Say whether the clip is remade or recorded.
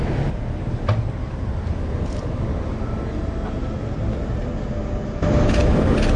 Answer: recorded